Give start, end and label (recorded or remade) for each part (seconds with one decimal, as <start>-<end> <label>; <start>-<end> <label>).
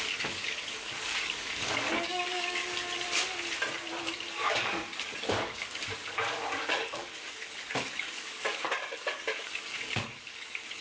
0.0-2.6 remade; 2.6-4.3 recorded; 4.3-10.8 remade